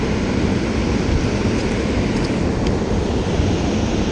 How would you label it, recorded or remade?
remade